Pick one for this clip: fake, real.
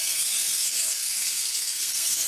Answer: fake